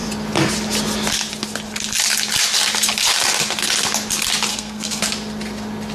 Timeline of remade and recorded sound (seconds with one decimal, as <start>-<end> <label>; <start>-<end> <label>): 0.0-4.5 recorded; 4.5-5.0 remade; 5.0-5.9 recorded